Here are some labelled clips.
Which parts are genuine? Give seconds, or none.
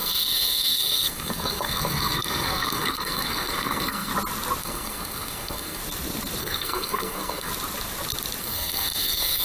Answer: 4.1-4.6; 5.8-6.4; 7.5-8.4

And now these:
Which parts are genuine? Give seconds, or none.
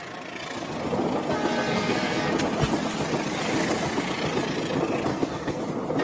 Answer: 0.0-1.7; 2.3-5.1; 5.6-6.0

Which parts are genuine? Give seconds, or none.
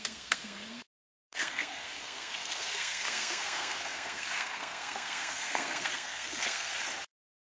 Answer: 6.7-7.4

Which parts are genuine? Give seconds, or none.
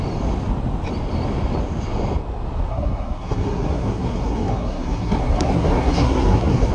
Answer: 0.0-2.7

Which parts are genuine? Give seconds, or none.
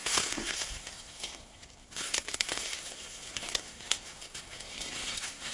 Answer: none